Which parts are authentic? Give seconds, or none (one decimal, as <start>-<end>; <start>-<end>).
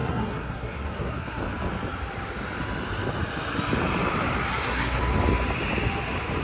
1.4-4.5; 5.0-6.4